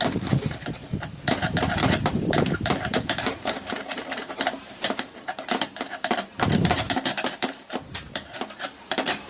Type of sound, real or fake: fake